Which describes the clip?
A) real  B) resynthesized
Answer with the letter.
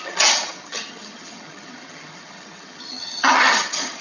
B